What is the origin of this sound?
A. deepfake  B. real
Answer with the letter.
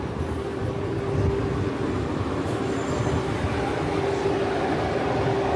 B